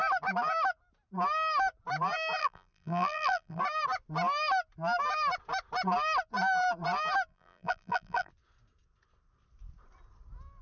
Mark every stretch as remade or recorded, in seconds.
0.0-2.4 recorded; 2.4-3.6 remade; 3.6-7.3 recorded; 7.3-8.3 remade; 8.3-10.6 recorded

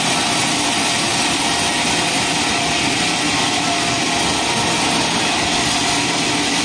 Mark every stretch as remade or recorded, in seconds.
0.0-6.6 recorded

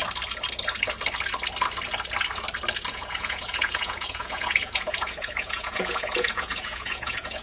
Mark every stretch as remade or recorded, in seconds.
0.0-2.9 recorded; 2.9-7.4 remade

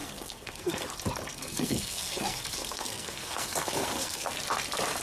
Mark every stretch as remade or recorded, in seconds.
0.0-0.9 remade; 0.9-1.3 recorded; 1.3-4.3 remade; 4.3-5.0 recorded

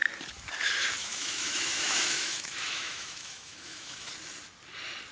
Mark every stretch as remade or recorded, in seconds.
0.0-1.0 recorded; 1.0-4.1 remade; 4.1-5.1 recorded

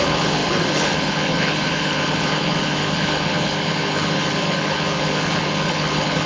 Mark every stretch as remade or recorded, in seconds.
0.0-6.3 remade